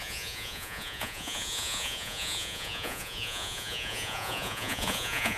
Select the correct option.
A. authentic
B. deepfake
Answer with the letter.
B